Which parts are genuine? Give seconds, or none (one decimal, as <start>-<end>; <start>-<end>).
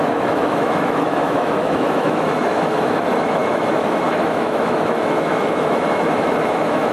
none